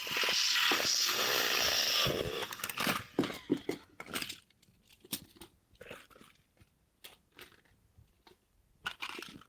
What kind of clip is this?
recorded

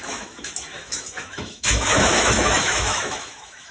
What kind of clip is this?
remade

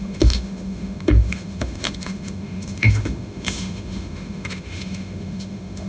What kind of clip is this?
remade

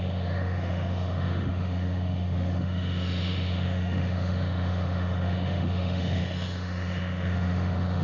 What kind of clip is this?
remade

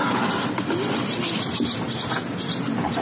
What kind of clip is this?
recorded